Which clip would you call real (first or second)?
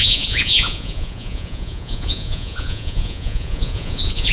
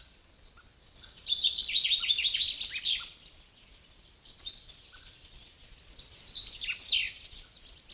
second